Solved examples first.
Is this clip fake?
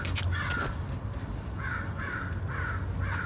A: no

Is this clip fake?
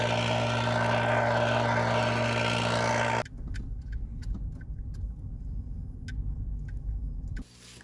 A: no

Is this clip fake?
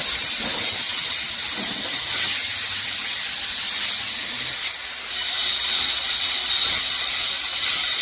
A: no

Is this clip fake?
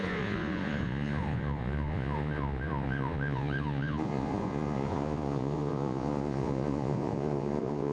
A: yes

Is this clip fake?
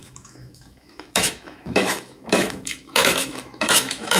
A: yes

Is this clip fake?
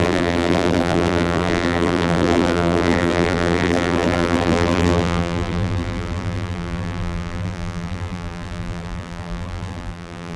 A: yes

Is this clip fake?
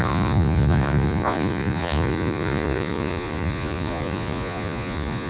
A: yes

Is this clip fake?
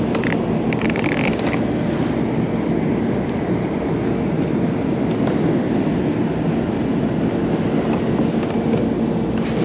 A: no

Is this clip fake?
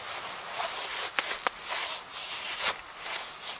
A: no